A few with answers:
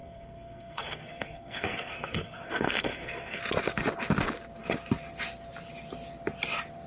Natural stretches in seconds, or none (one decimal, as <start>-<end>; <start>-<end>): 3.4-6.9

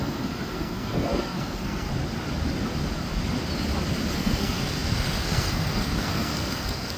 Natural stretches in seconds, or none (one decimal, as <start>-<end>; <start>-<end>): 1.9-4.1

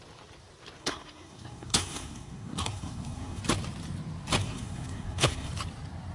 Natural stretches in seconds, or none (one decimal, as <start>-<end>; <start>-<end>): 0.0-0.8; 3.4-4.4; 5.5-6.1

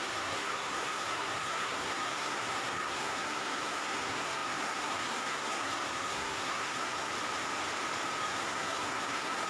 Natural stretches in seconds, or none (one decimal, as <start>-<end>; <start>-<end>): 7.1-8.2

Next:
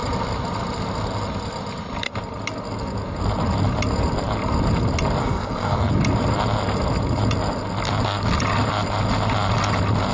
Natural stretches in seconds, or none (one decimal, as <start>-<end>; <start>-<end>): 0.0-5.2; 5.9-10.1